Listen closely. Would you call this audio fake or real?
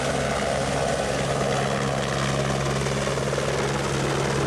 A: real